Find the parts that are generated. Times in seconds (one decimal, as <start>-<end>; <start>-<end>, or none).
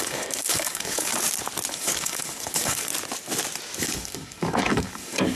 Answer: 0.0-1.1; 1.7-2.9; 3.8-5.4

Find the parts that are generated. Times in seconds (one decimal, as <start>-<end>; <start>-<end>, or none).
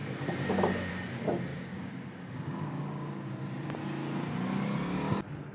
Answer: 1.5-3.3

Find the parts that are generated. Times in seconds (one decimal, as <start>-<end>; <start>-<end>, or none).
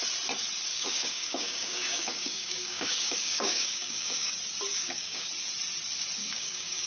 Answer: 0.7-4.3; 4.7-5.3; 6.2-6.9